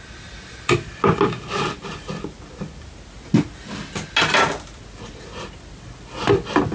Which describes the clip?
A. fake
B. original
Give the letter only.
B